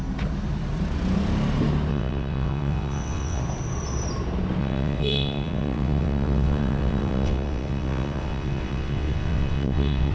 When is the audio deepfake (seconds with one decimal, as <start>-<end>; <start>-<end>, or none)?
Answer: 1.9-3.4; 4.6-10.1